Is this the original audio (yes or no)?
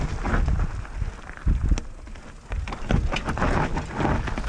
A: yes